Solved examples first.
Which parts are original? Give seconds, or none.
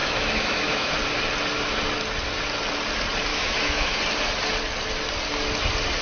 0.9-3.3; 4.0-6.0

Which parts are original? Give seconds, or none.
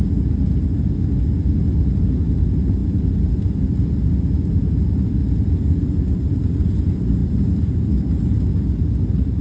0.0-9.4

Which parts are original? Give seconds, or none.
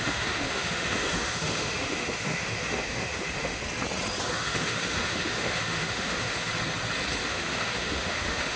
3.6-4.3; 6.5-7.2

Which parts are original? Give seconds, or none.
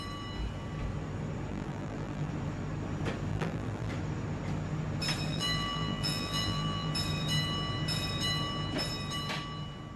0.0-1.5; 2.3-3.3; 3.9-5.3; 6.9-10.0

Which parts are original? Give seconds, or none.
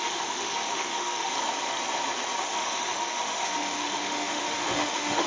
1.3-2.4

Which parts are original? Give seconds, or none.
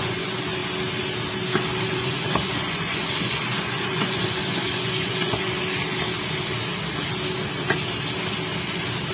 0.6-1.8; 5.6-9.1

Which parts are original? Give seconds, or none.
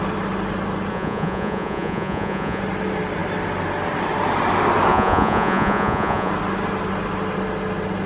0.0-0.9; 2.6-4.9; 6.3-8.1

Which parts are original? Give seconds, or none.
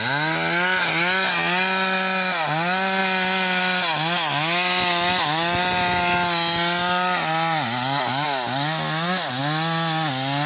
0.0-10.5